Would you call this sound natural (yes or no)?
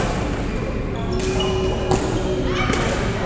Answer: yes